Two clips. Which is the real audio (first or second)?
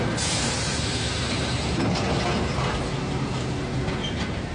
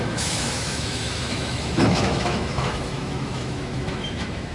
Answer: first